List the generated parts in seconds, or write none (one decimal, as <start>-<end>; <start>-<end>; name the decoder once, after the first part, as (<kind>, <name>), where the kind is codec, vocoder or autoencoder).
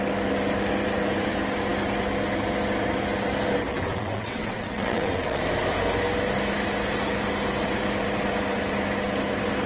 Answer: 3.7-5.4 (vocoder, WaveNeXt)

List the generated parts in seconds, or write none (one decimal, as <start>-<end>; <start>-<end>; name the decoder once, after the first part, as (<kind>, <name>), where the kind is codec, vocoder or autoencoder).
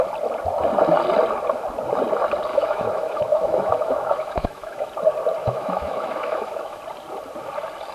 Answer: 2.5-4.9 (autoencoder, DAC-VAE); 5.4-6.8